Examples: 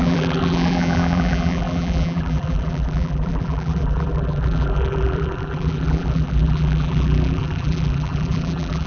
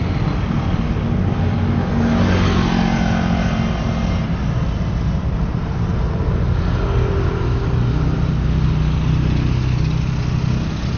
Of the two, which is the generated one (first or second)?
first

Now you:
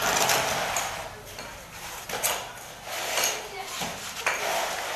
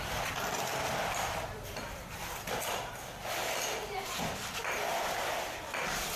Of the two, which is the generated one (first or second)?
second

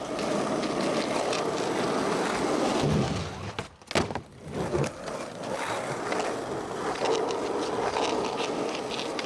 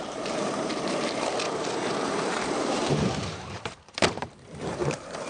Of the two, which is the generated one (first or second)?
second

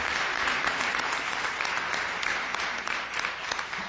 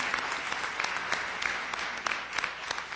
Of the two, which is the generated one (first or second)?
first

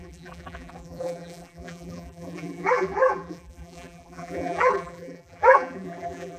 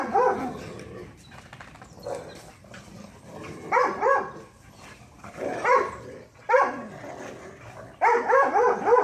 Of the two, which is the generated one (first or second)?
first